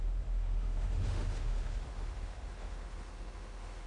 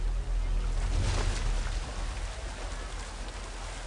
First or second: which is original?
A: second